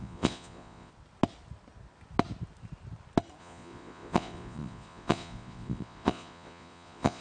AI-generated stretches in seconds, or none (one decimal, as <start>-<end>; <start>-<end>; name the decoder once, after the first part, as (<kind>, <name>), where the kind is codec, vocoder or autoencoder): 0.0-0.9 (vocoder, Vocos); 3.4-7.2